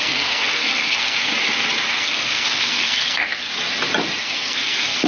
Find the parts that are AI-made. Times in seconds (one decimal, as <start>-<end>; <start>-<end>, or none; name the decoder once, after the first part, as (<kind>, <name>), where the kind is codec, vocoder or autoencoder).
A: 0.0-1.3 (codec, SNAC); 1.9-3.5; 4.2-5.1